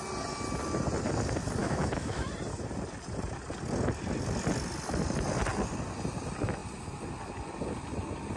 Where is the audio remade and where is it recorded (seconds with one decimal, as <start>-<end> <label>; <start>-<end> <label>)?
0.0-1.6 recorded; 1.6-2.3 remade; 2.3-8.4 recorded